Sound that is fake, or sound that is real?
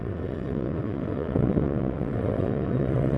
fake